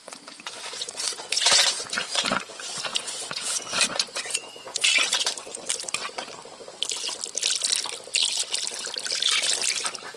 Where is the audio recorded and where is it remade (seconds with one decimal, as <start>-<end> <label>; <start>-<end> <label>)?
0.0-2.4 remade; 2.4-2.9 recorded; 2.9-5.7 remade; 5.7-10.2 recorded